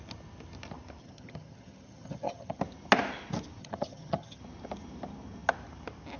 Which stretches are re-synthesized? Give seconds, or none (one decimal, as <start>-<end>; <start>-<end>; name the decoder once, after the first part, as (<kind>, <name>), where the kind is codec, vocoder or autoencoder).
1.0-2.6 (vocoder, HiFi-GAN); 3.6-4.4